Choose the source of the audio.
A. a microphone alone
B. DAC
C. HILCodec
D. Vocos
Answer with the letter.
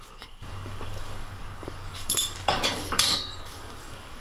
B